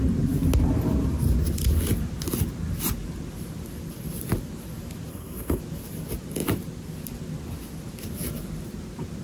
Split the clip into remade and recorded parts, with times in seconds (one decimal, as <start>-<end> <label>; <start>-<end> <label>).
0.0-5.1 recorded; 5.1-5.6 remade; 5.6-9.2 recorded

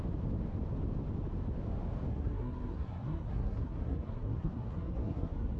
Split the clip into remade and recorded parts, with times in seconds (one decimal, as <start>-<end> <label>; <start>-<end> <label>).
0.0-2.1 recorded; 2.1-5.6 remade